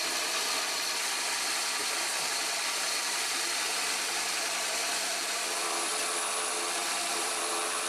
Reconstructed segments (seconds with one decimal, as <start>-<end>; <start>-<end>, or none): 2.1-5.9; 6.8-7.5